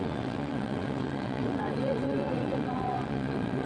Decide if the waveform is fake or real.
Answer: fake